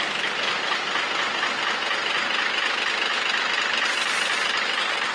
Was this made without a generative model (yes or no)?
yes